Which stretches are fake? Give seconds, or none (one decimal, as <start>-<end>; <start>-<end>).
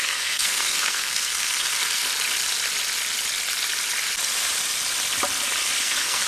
0.0-2.0; 5.8-6.3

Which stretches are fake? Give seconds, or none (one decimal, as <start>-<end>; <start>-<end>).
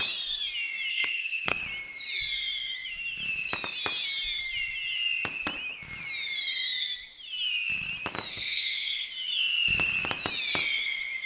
0.9-1.6; 8.3-9.1